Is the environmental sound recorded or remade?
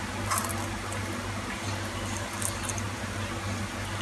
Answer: recorded